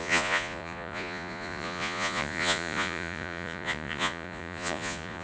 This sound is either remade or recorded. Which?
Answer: remade